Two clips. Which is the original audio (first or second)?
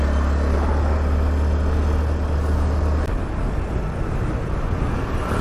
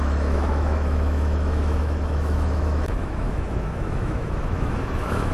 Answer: first